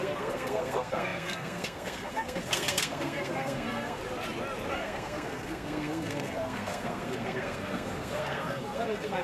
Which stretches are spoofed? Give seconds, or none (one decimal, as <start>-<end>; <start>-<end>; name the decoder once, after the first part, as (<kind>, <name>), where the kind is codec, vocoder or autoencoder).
0.0-4.0 (codec, SNAC); 4.7-9.2